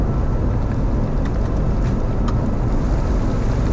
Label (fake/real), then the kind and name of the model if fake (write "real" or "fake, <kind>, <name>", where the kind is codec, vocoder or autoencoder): real